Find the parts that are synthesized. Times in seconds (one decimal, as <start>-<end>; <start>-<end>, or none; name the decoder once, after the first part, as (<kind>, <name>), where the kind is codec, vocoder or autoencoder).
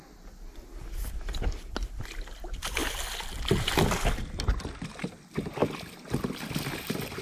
none